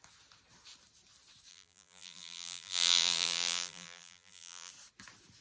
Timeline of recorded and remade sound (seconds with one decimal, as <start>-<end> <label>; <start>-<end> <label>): 0.0-1.5 recorded; 1.5-4.7 remade; 4.7-5.4 recorded

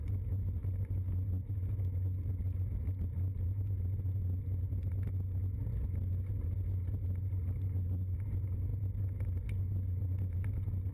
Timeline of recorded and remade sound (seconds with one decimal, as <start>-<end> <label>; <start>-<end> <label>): 0.0-10.9 recorded

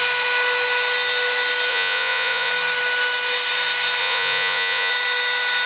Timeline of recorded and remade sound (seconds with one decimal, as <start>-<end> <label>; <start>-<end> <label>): 0.0-1.7 recorded; 1.7-2.5 remade; 2.5-4.0 recorded; 4.0-4.9 remade; 4.9-5.7 recorded